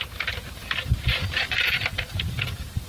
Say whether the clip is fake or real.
fake